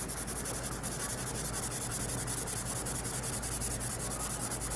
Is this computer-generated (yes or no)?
no